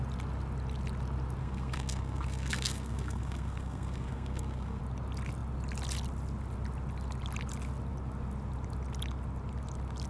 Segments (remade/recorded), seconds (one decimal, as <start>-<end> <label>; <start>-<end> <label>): 0.0-1.4 recorded; 1.4-4.8 remade; 4.8-10.1 recorded